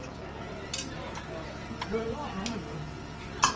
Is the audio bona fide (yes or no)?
yes